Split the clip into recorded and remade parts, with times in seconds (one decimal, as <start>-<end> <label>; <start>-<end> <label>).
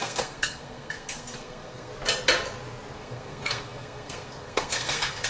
0.0-1.9 remade; 1.9-2.9 recorded; 2.9-5.3 remade